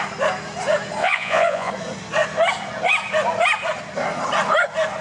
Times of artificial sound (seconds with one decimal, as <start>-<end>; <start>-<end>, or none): 1.0-1.7